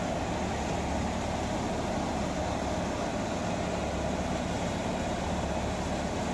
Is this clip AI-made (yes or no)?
no